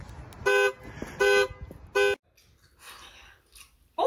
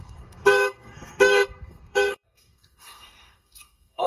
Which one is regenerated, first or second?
second